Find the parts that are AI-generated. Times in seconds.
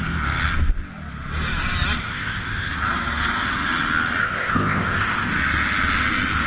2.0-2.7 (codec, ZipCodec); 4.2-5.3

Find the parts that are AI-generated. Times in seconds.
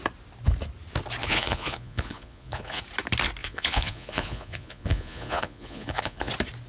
1.2-2.8 (vocoder, Vocos); 3.4-6.3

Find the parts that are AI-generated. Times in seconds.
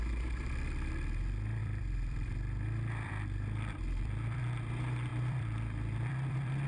1.6-4.4 (vocoder, BigVGAN v2); 5.1-6.7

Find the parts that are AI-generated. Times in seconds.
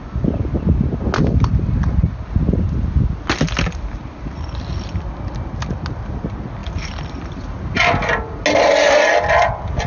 none